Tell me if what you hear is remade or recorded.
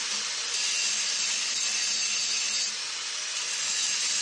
recorded